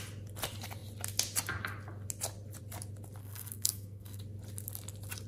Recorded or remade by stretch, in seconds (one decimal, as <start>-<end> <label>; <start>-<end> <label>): 0.0-3.2 recorded; 3.2-4.2 remade; 4.2-5.3 recorded